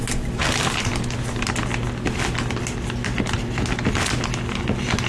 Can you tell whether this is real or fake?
real